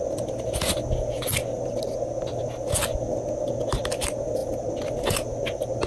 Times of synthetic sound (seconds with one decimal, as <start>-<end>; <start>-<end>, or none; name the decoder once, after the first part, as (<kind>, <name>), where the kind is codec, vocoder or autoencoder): none

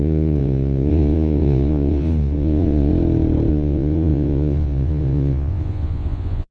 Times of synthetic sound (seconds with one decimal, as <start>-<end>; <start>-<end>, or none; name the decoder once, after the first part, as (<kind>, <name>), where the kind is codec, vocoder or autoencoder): 0.0-2.9 (vocoder, Vocos); 3.5-6.5

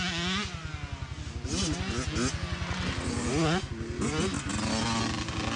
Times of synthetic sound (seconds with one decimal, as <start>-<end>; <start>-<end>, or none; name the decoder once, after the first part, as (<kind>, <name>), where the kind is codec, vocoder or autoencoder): none

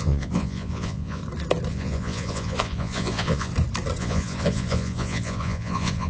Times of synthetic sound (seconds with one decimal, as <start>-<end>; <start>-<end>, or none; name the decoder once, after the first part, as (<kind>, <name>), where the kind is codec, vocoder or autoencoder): 0.0-1.2 (vocoder, Vocos); 1.7-3.5; 4.0-6.1

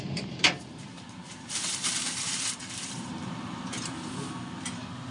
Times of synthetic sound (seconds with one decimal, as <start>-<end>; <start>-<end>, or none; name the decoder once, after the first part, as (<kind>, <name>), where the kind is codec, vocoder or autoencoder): 0.9-4.0 (vocoder, BigVGAN v2)

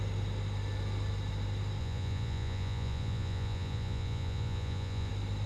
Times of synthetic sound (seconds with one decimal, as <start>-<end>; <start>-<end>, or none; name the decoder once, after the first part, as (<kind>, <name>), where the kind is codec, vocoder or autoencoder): 1.8-5.1 (vocoder, Vocos)

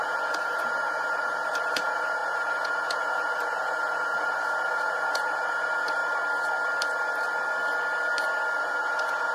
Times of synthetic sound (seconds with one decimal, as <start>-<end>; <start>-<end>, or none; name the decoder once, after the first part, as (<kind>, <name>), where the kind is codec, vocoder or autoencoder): 0.0-6.0 (vocoder, Vocos); 8.6-9.3